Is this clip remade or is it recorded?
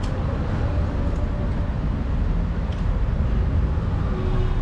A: recorded